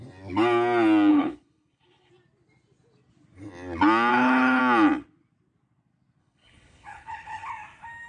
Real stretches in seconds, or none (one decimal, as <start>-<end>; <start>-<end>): 0.0-1.1; 2.1-4.1; 4.6-6.2; 7.5-8.1